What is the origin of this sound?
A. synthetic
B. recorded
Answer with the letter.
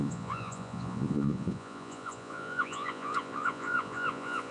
A